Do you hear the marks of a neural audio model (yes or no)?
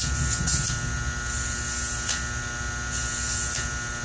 no